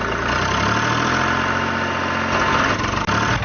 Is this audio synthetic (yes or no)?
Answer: no